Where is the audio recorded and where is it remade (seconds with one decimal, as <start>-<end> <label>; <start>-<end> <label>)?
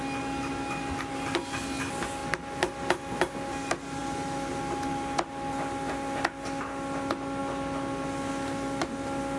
0.0-9.4 recorded